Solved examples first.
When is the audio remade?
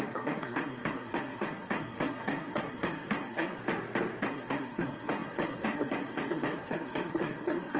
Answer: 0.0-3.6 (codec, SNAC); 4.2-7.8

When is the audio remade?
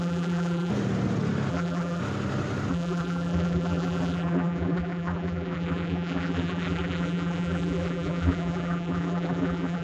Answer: 0.0-0.7 (vocoder, BigVGAN v2); 1.5-2.0; 2.7-9.8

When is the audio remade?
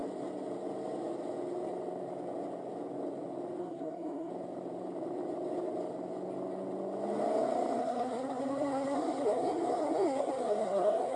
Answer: 3.6-4.3 (codec, SNAC); 7.8-11.2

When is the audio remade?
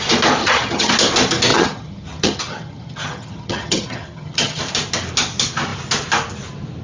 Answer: 0.4-0.9 (vocoder, HiFi-GAN); 1.5-4.6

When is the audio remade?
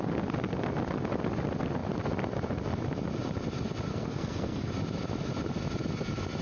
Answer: 3.9-4.7 (codec, SNAC)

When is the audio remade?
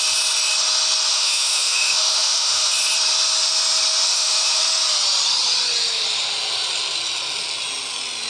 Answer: 1.1-2.7 (autoencoder, DAC-VAE); 4.1-4.6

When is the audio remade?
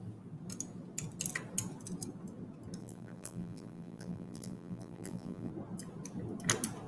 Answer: 2.8-5.5 (vocoder, BigVGAN v2)